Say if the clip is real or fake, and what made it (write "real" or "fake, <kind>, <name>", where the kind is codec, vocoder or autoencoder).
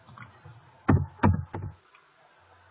real